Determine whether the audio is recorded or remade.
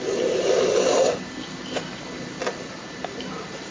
recorded